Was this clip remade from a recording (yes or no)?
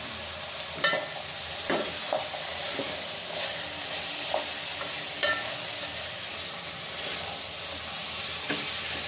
no